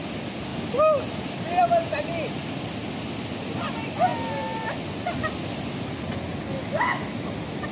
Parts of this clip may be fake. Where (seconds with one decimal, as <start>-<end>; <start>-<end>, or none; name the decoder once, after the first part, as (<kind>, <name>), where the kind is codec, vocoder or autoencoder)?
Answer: none